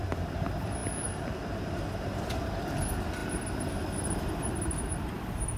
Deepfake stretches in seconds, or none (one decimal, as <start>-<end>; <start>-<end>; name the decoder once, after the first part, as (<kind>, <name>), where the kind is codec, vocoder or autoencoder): 0.0-5.6 (vocoder, BigVGAN v2)